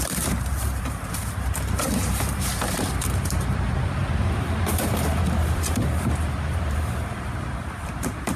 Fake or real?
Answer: fake